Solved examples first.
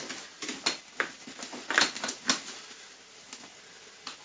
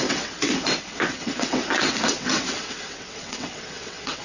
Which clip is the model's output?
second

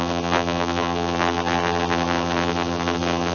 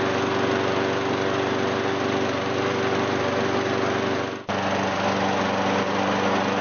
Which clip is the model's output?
first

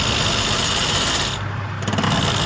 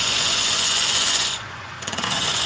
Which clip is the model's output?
second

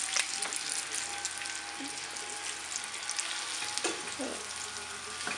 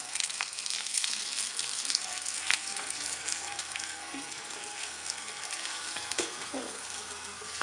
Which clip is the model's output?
second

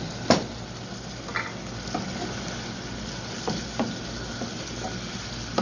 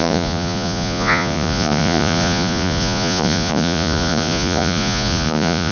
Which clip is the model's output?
second